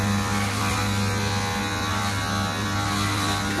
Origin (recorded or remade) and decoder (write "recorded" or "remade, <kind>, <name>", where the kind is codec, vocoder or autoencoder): recorded